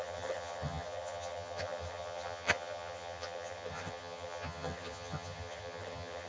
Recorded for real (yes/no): no